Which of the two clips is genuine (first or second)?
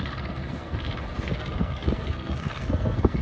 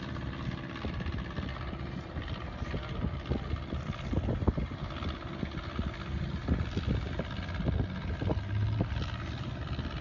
second